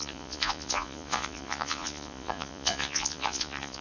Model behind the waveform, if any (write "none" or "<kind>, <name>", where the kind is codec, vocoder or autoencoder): vocoder, Vocos